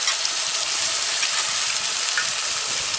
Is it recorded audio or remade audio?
recorded